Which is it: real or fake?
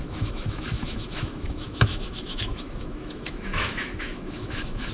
fake